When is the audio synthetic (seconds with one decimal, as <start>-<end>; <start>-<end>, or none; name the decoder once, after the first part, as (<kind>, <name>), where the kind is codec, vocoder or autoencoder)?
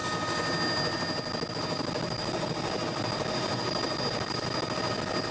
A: 1.5-5.3 (vocoder, BigVGAN v2)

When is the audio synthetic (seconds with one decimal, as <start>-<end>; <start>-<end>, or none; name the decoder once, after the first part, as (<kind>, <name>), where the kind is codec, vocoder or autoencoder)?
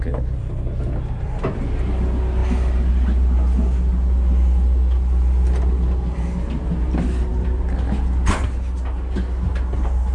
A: none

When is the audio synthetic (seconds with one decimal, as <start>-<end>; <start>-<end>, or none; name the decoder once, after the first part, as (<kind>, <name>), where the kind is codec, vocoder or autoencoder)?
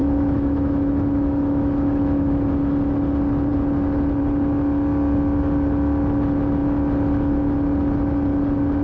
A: 0.0-2.5 (autoencoder, DAC-VAE)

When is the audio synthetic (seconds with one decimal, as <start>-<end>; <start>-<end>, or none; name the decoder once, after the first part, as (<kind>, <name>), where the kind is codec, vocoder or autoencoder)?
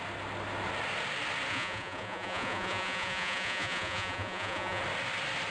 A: 1.5-4.8 (vocoder, Vocos)